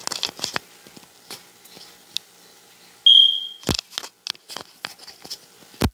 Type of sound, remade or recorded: recorded